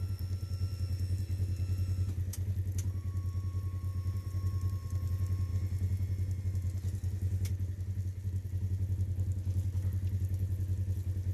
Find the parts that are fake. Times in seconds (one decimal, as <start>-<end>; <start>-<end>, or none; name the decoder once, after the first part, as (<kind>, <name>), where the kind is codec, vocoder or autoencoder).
none